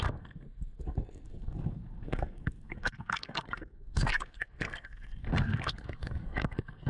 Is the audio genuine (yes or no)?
no